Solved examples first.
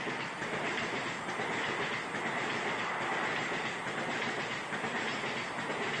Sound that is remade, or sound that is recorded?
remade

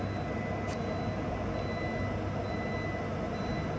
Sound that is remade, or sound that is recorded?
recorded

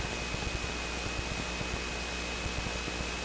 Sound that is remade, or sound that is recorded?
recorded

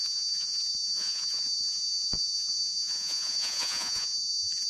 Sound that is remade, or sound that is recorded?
remade